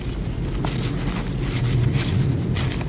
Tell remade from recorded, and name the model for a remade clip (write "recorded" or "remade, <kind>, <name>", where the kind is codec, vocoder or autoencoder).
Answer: recorded